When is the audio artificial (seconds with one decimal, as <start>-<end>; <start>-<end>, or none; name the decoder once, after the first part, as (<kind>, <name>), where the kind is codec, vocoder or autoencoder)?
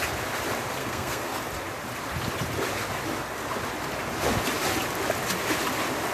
0.8-1.4 (codec, SNAC)